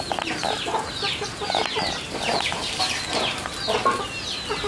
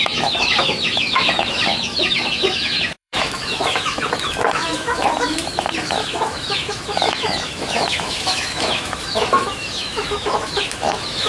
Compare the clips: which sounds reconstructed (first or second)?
second